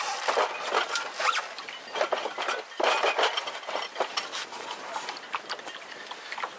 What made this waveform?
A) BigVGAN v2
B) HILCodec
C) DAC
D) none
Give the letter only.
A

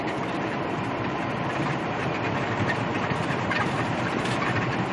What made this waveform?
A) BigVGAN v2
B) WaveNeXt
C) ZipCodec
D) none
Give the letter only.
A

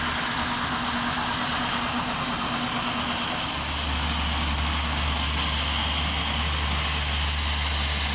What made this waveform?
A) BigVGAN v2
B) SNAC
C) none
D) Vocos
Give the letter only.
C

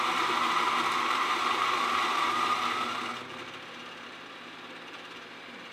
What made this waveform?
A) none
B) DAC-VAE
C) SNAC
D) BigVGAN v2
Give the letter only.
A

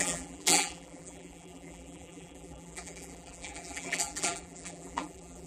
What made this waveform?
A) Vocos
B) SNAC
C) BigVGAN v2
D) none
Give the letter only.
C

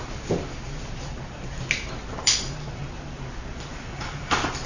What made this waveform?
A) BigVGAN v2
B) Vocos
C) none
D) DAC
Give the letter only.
C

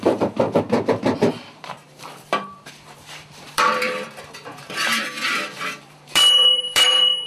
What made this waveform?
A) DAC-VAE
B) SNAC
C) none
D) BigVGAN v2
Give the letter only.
D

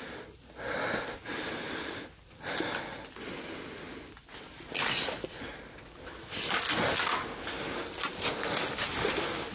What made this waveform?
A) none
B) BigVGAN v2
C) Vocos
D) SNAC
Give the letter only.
A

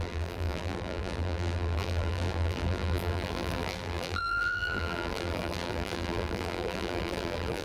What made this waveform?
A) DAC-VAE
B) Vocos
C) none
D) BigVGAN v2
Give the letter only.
D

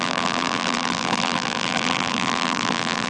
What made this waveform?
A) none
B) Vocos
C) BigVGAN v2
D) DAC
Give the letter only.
C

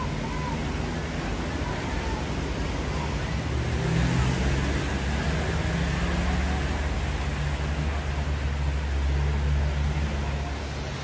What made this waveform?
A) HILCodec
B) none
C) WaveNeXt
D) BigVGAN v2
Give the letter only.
B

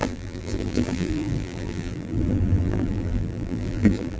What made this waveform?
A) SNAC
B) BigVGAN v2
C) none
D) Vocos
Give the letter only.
B